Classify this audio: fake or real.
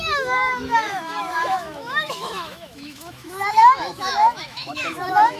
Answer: fake